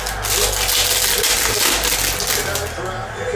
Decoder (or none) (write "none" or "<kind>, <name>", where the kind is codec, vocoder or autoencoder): none